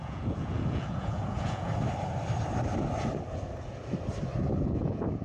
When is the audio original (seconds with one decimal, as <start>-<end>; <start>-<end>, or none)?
1.7-4.8